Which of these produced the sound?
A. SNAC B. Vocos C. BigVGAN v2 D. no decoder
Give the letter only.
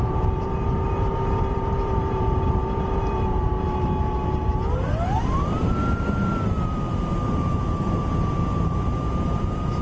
C